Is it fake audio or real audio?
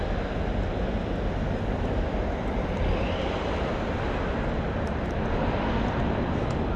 real